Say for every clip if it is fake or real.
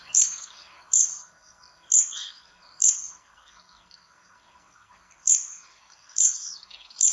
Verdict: fake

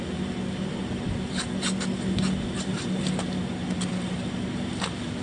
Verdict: real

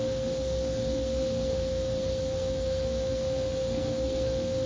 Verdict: fake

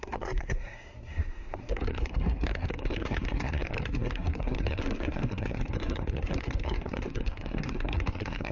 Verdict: fake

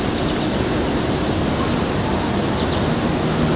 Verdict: real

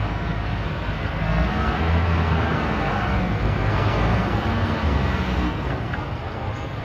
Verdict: fake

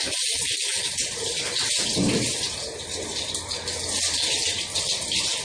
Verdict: real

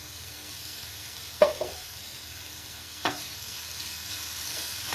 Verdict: fake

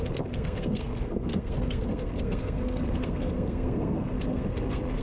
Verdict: fake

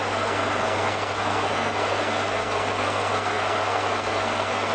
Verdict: fake